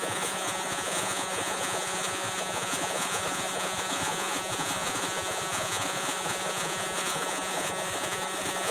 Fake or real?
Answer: fake